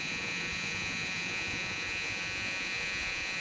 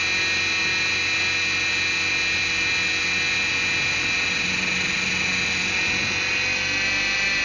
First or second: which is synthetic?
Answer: first